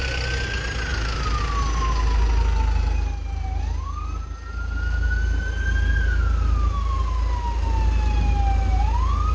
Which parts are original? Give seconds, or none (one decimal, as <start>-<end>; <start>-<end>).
0.0-9.3